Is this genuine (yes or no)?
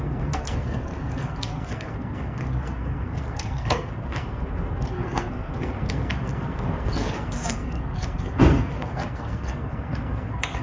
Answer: no